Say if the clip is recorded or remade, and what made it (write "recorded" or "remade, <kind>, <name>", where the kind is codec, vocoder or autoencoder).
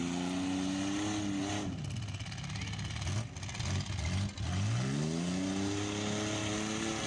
recorded